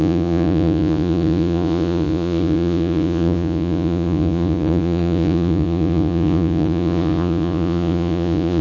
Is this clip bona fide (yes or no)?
no